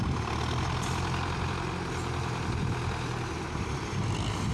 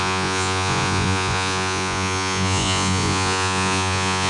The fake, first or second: second